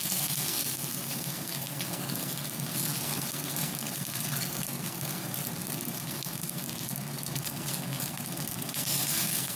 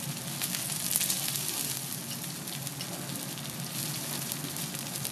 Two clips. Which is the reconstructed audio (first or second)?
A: first